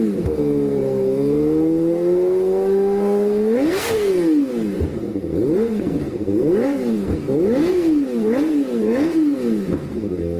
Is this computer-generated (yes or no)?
yes